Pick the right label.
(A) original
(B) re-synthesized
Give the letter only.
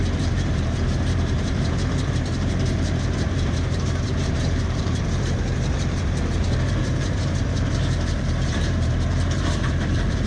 B